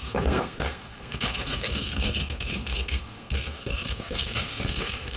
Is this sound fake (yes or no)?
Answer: yes